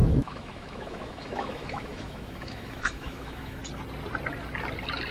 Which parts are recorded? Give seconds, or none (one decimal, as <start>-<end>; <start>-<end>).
3.6-5.1